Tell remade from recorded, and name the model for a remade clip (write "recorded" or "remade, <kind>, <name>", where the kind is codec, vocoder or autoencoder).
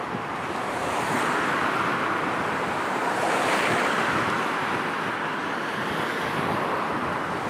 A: recorded